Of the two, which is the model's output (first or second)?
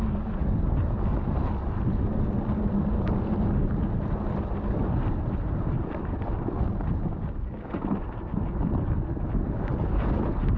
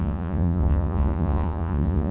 second